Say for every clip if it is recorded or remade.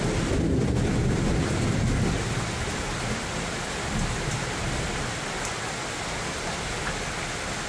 recorded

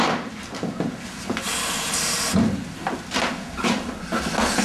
recorded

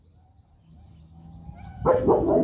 recorded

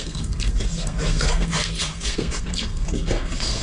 remade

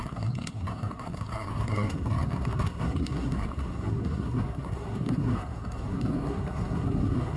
remade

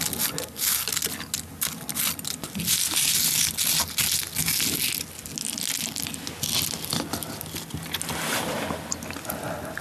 recorded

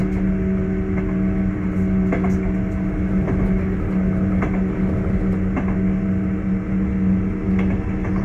recorded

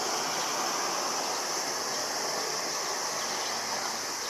recorded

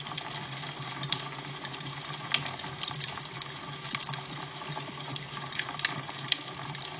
recorded